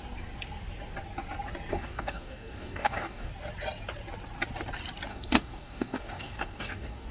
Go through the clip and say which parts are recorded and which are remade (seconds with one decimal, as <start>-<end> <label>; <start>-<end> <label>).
0.0-1.7 recorded; 1.7-3.3 remade; 3.3-5.1 recorded; 5.1-7.1 remade